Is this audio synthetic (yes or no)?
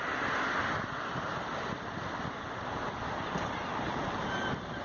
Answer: no